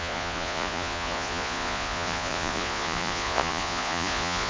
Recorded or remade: remade